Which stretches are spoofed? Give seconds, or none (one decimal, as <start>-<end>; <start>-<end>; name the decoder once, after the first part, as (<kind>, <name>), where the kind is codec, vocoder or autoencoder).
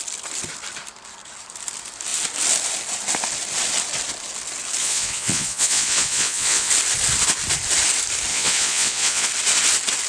4.8-6.7 (vocoder, Vocos); 8.3-9.3